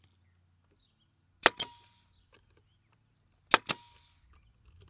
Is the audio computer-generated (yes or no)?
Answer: no